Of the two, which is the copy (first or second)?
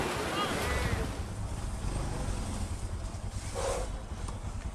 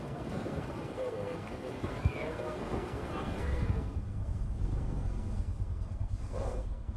second